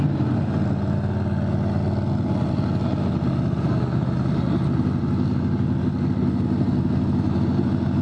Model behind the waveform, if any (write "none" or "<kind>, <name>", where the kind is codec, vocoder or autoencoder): none